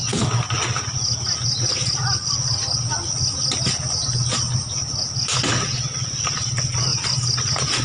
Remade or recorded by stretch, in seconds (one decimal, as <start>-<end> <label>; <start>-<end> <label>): 0.0-7.8 recorded